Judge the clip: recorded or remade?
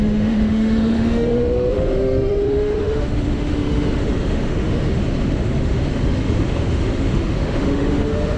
remade